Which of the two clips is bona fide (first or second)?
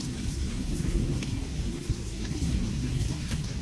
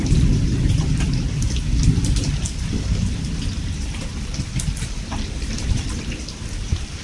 second